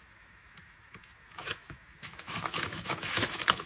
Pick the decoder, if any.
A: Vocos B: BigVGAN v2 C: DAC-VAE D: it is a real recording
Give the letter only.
C